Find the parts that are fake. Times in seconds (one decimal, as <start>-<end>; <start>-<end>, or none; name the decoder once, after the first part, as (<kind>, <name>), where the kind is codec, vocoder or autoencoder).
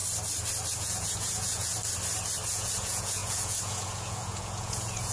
0.8-1.7 (vocoder, Vocos); 2.5-5.1